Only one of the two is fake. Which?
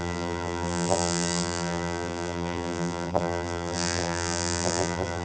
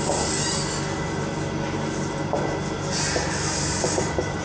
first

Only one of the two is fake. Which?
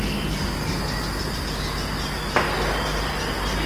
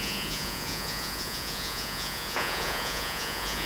second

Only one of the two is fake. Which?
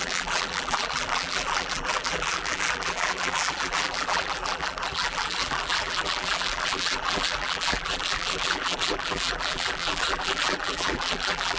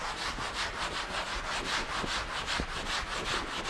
first